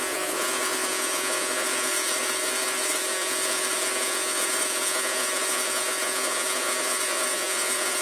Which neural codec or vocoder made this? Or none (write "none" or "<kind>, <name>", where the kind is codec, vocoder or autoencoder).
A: vocoder, Vocos